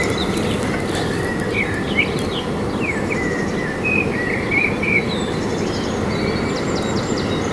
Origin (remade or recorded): remade